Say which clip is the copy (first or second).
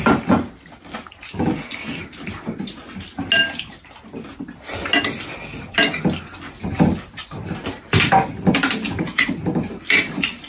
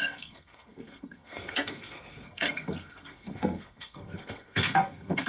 second